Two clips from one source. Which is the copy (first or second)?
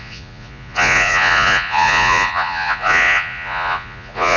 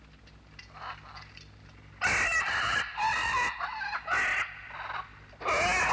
first